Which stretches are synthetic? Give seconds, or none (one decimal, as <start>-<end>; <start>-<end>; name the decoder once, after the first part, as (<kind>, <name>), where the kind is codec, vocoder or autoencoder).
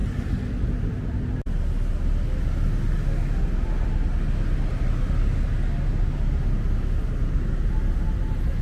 none